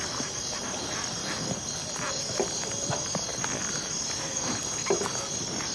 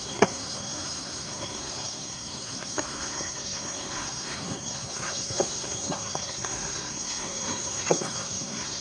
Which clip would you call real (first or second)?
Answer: first